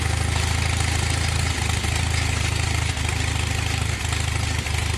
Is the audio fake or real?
real